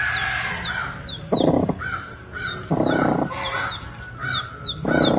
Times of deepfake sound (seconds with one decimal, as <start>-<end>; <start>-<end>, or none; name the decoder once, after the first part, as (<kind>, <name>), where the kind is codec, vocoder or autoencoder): 0.8-3.6 (vocoder, BigVGAN v2); 4.2-5.2